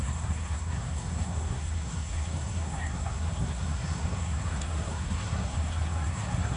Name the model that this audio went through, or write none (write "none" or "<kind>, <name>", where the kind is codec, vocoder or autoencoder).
codec, SNAC